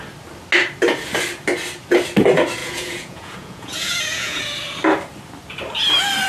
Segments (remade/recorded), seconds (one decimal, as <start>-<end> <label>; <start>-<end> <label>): 0.0-2.6 recorded; 2.6-4.4 remade; 4.4-6.3 recorded